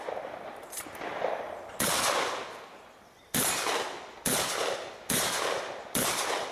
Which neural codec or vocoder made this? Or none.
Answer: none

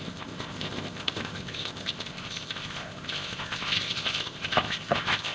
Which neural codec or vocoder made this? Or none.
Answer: codec, ZipCodec